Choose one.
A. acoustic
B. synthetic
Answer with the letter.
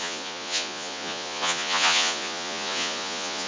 B